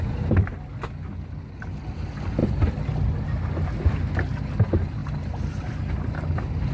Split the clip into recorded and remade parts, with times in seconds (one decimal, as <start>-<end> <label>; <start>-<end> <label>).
0.0-6.7 recorded

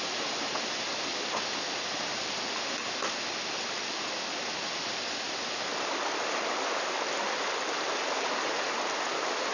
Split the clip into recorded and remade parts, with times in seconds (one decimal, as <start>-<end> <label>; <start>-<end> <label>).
0.0-9.5 recorded

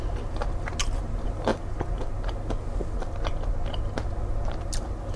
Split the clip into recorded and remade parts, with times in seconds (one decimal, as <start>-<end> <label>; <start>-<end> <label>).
0.0-5.2 recorded

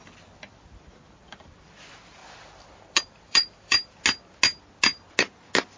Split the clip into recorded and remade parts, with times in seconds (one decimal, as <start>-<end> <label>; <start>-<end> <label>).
0.0-2.2 recorded; 2.2-3.9 remade; 3.9-5.8 recorded

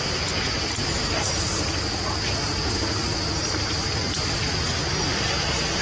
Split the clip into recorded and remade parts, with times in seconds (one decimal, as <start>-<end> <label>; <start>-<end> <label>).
0.0-5.8 recorded

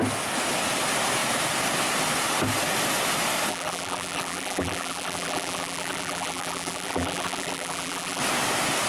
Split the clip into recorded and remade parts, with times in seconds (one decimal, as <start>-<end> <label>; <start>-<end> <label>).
0.0-3.5 recorded; 3.5-8.2 remade; 8.2-8.9 recorded

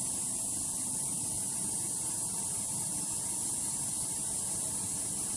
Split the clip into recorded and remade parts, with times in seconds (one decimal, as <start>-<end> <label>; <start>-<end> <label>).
0.0-1.5 recorded; 1.5-2.8 remade; 2.8-5.4 recorded

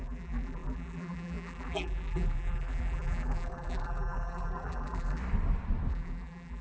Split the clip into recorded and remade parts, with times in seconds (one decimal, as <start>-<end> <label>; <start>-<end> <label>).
0.0-5.2 remade; 5.2-5.9 recorded; 5.9-6.6 remade